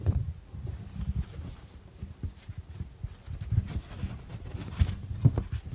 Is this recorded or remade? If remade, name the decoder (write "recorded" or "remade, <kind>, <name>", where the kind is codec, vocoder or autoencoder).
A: recorded